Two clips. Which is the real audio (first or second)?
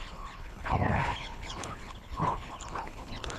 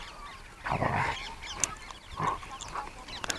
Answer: second